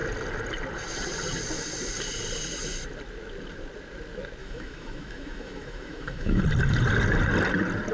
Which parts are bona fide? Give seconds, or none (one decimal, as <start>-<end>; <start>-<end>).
0.0-4.4; 6.4-7.9

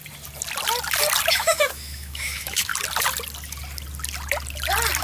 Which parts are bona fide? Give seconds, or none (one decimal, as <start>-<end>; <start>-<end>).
0.0-1.3; 2.7-5.0

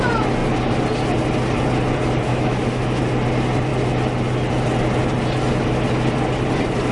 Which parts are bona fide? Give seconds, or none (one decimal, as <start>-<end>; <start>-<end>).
0.0-2.3; 3.0-6.9

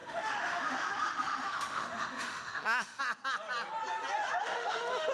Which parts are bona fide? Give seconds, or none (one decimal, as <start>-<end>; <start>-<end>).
3.0-4.4

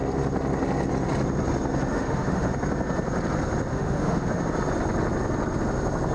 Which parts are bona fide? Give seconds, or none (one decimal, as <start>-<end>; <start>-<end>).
0.0-1.9; 2.5-3.7; 4.4-6.1